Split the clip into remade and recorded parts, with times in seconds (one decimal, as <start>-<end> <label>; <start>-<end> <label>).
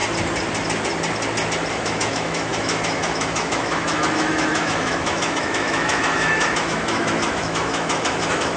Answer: 0.0-1.7 recorded; 1.7-8.6 remade